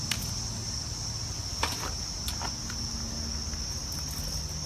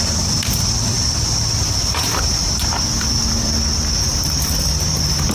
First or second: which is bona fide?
first